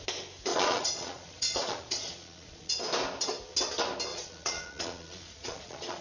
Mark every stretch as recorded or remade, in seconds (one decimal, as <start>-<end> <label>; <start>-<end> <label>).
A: 0.0-0.5 recorded; 0.5-2.7 remade; 2.7-4.1 recorded; 4.1-6.0 remade